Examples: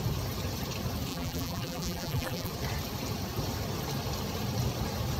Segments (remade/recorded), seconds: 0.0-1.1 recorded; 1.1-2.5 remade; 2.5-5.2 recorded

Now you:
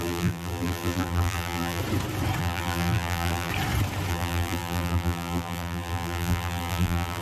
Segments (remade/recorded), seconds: 0.0-1.8 remade; 1.8-2.4 recorded; 2.4-3.5 remade; 3.5-4.1 recorded; 4.1-7.2 remade

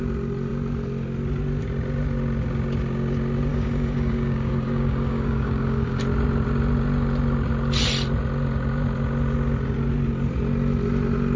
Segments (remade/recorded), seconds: 0.0-3.5 recorded; 3.5-6.0 remade; 6.0-11.4 recorded

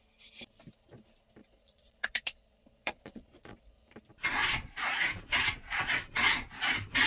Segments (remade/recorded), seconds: 0.0-1.4 recorded; 1.4-3.7 remade; 3.7-4.4 recorded; 4.4-6.5 remade; 6.5-7.1 recorded

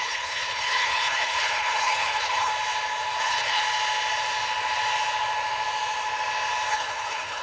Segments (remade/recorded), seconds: 0.0-2.5 remade; 2.5-3.2 recorded; 3.2-3.6 remade; 3.6-6.7 recorded; 6.7-7.4 remade

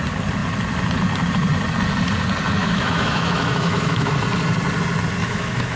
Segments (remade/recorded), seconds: 0.0-2.6 recorded; 2.6-4.1 remade; 4.1-5.2 recorded; 5.2-5.8 remade